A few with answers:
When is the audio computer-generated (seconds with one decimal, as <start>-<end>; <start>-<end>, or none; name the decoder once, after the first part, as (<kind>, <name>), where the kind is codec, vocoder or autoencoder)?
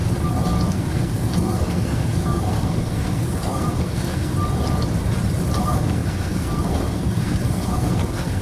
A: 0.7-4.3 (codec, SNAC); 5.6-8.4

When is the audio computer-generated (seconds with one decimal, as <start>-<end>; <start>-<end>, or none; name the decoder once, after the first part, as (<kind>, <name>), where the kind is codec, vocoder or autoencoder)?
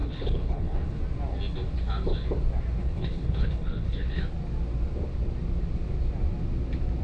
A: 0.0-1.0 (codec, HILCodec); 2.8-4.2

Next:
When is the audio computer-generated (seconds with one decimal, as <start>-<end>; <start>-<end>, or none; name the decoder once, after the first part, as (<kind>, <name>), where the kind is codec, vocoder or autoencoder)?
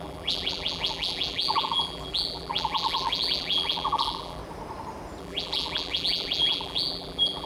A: 0.0-4.4 (vocoder, BigVGAN v2); 5.2-7.5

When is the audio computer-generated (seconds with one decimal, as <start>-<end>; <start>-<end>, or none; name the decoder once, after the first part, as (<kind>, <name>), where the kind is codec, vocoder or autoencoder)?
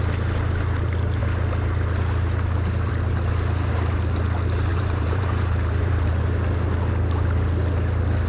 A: 4.7-6.2 (vocoder, BigVGAN v2)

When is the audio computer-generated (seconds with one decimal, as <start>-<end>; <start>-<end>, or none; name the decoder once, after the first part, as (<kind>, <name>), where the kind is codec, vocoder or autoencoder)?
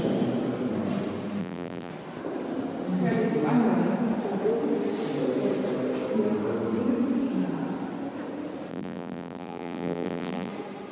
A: 1.4-1.9 (vocoder, BigVGAN v2); 8.7-10.5